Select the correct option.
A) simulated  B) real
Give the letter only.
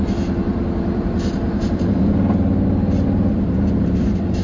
A